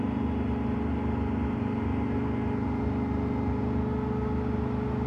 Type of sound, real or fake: real